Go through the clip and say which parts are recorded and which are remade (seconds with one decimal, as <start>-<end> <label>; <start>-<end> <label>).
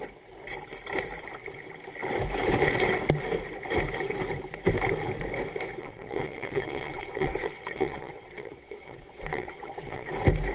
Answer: 0.0-5.8 recorded; 5.8-10.1 remade; 10.1-10.5 recorded